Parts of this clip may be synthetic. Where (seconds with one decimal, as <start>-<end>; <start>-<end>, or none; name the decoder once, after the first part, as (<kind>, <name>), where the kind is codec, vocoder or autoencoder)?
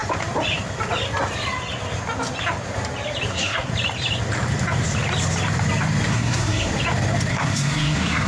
3.3-3.7 (codec, SNAC); 6.1-6.7; 7.3-8.3